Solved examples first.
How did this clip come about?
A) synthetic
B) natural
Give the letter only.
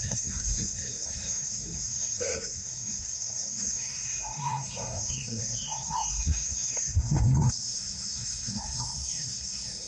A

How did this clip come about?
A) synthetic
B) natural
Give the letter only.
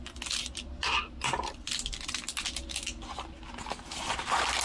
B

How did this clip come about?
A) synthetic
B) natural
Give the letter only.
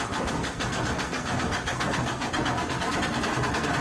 A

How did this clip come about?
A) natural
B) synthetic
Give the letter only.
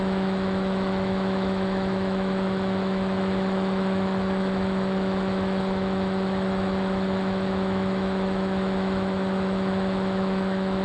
B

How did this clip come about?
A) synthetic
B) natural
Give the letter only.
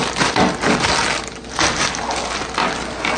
B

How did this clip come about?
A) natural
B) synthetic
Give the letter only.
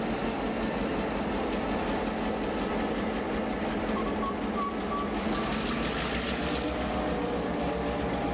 A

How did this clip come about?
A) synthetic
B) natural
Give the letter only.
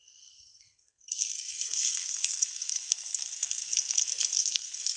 A